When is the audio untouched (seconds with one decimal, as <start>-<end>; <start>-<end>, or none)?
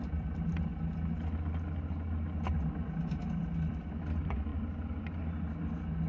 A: 0.7-2.7